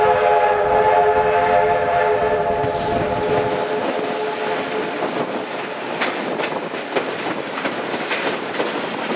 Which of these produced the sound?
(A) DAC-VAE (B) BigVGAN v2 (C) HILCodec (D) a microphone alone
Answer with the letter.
D